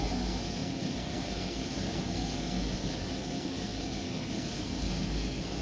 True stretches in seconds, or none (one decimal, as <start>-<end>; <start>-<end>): none